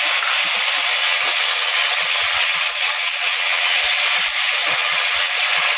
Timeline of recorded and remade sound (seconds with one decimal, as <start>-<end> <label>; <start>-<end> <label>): 0.0-1.0 recorded; 1.0-3.8 remade; 3.8-4.6 recorded; 4.6-5.3 remade; 5.3-5.8 recorded